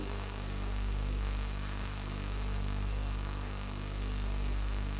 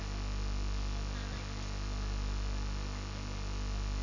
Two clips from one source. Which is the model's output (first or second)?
first